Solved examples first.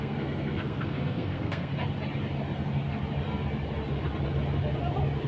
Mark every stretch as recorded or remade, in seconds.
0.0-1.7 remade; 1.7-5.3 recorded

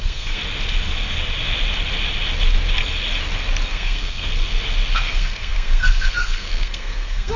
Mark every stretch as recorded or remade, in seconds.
0.0-0.4 remade; 0.4-3.7 recorded; 3.7-4.3 remade; 4.3-4.9 recorded; 4.9-7.4 remade

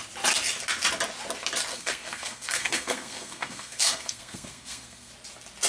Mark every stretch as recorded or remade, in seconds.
0.0-1.7 recorded; 1.7-5.1 remade; 5.1-5.7 recorded

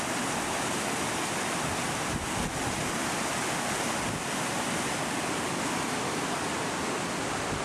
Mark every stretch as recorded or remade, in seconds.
0.0-7.6 recorded

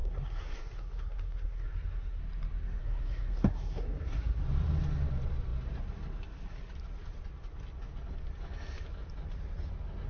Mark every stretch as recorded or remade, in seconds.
0.0-2.2 remade; 2.2-2.8 recorded; 2.8-4.4 remade; 4.4-10.1 recorded

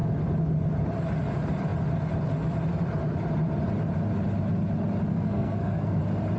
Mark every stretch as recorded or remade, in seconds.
0.0-5.1 recorded; 5.1-6.0 remade; 6.0-6.4 recorded

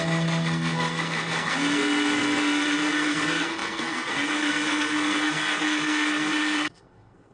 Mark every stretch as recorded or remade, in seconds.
0.0-7.3 remade

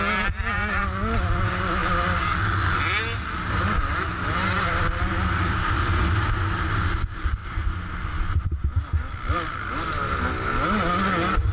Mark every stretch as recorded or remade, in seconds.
0.0-11.5 recorded